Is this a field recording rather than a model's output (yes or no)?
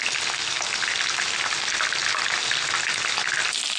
yes